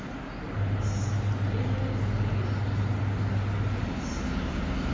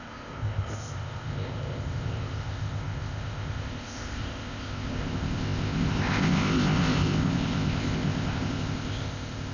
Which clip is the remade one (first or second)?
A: second